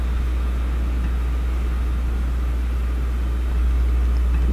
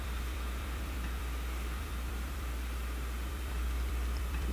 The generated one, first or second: second